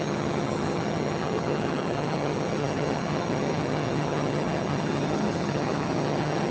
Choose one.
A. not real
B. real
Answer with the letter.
A